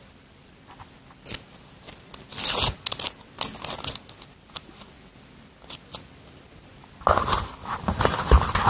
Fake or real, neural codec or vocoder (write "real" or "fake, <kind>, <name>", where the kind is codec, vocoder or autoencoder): real